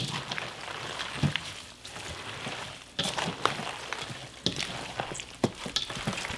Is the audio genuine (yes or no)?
no